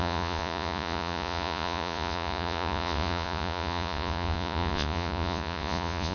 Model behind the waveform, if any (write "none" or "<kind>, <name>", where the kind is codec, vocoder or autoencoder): vocoder, Vocos